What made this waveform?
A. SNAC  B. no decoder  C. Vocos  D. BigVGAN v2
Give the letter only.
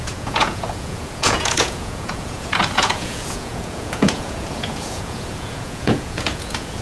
C